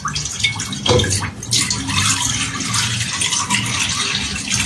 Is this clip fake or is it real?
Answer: real